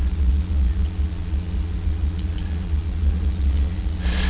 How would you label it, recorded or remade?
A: remade